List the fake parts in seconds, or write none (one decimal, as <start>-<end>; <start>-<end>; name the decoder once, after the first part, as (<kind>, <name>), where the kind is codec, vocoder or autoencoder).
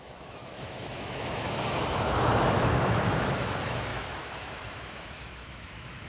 0.0-6.1 (autoencoder, DAC-VAE)